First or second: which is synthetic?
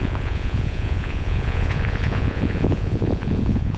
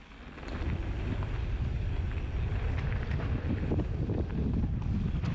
first